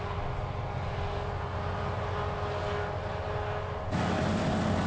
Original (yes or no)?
yes